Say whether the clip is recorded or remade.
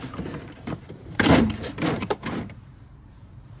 remade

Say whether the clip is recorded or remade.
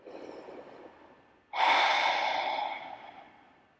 recorded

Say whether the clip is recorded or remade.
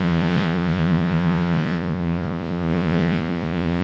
remade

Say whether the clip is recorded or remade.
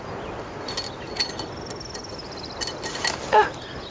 recorded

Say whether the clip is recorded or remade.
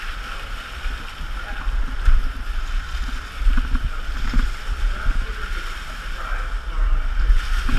recorded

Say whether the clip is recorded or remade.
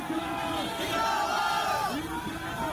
recorded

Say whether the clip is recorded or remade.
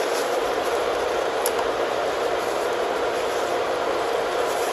remade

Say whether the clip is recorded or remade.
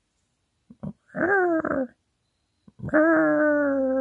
recorded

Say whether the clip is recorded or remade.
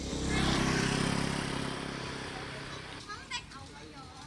remade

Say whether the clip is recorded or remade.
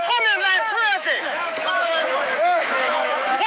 remade